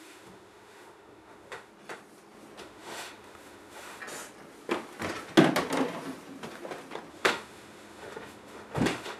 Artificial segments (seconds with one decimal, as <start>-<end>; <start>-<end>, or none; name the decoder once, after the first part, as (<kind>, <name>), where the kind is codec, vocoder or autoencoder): 0.0-1.7 (autoencoder, DAC-VAE); 2.6-4.0; 7.1-9.2